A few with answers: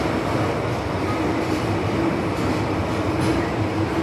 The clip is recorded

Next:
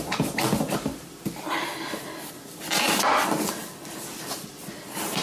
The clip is recorded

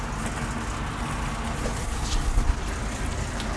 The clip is recorded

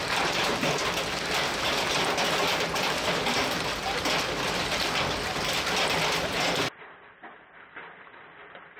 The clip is recorded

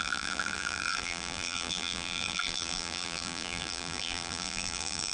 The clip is remade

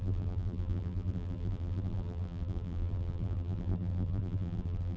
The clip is remade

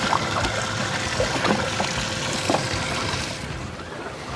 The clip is recorded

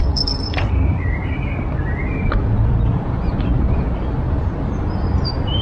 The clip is remade